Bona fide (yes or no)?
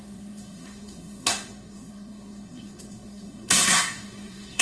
no